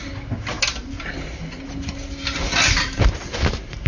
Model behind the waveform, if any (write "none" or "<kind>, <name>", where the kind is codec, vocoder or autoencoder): none